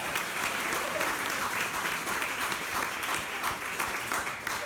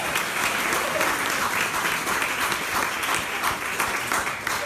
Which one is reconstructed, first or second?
first